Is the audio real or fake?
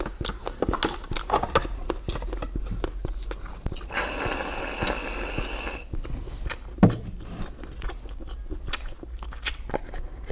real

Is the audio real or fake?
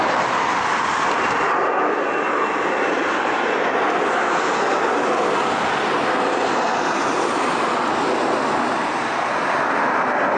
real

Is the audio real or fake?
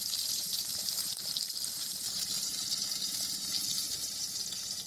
fake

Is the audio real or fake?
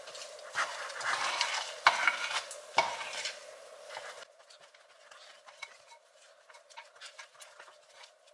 fake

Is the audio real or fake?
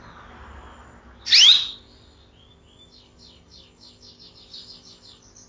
real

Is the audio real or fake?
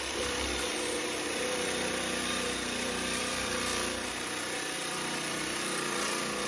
fake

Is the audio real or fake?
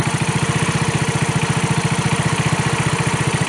real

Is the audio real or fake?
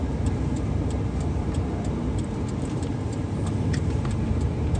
fake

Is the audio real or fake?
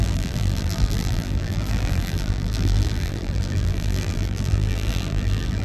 fake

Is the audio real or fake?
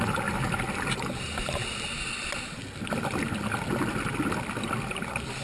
real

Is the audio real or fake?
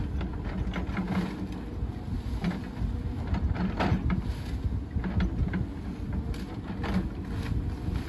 real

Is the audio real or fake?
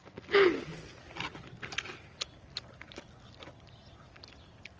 real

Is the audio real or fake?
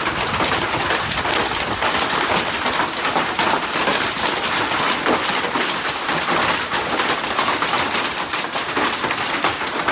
real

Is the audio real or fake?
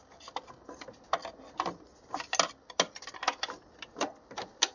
real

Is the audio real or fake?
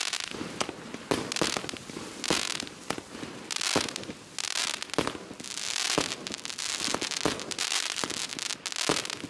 real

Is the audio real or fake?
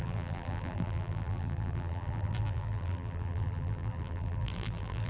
fake